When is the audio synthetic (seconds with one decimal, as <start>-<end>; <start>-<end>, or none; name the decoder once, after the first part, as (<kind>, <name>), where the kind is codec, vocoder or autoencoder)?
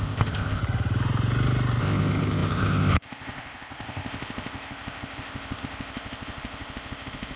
0.0-0.6 (codec, ZipCodec); 1.8-7.4